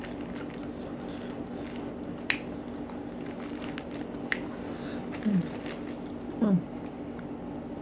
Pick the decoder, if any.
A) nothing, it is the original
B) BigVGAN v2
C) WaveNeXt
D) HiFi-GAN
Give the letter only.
A